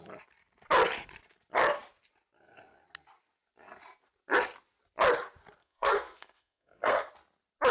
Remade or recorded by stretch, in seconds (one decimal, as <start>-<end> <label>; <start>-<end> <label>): 0.0-5.6 recorded; 5.6-7.1 remade; 7.1-7.7 recorded